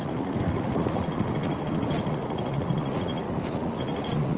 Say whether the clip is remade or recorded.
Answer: remade